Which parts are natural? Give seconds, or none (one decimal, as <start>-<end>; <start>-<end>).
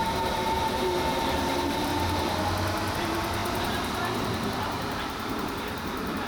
1.9-2.9